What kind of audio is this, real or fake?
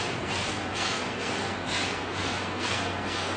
fake